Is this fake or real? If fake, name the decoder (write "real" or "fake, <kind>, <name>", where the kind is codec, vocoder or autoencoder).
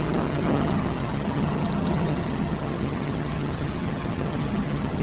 fake, vocoder, HiFi-GAN